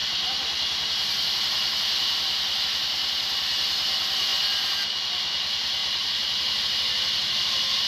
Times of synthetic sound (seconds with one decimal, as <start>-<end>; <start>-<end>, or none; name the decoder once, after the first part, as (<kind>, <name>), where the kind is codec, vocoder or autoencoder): 5.8-6.6 (vocoder, BigVGAN v2)